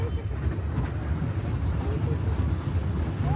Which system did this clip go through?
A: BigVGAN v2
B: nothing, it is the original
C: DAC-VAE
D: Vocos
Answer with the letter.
B